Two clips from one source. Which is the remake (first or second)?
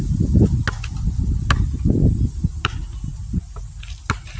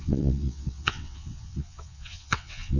second